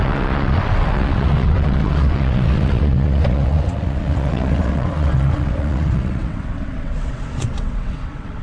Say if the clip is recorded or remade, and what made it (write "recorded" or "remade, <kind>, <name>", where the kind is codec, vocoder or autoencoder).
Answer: remade, vocoder, WaveNeXt